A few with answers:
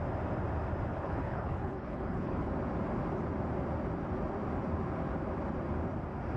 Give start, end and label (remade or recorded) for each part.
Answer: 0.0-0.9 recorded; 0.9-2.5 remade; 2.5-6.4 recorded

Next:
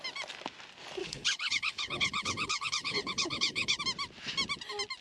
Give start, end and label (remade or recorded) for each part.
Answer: 0.0-1.0 recorded; 1.0-3.8 remade; 3.8-5.0 recorded

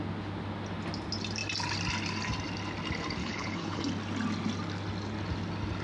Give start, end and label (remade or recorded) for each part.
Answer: 0.0-3.2 recorded; 3.2-3.8 remade; 3.8-5.8 recorded

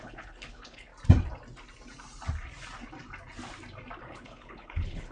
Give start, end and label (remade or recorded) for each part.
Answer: 0.0-0.9 remade; 0.9-4.0 recorded; 4.0-5.1 remade

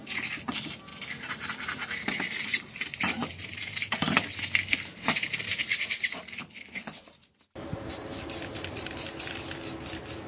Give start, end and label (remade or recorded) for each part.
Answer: 0.0-6.4 recorded; 6.4-7.0 remade; 7.0-10.3 recorded

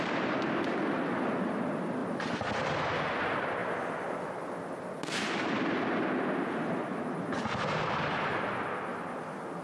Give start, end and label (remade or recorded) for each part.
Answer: 0.0-9.6 recorded

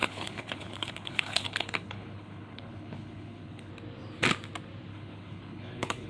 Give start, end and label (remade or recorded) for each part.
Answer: 0.0-3.7 remade; 3.7-4.9 recorded; 4.9-6.1 remade

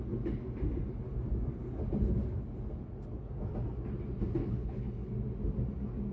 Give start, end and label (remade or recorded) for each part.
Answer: 0.0-4.4 recorded; 4.4-5.1 remade; 5.1-6.1 recorded